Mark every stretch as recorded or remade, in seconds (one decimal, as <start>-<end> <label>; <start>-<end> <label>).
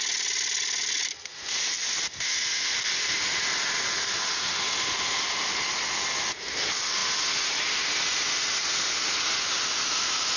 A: 0.0-10.4 recorded